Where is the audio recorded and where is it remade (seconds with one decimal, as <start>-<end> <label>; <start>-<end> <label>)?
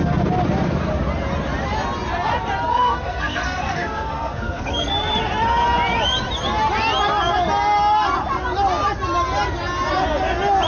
0.0-2.7 recorded; 2.7-4.9 remade; 4.9-10.7 recorded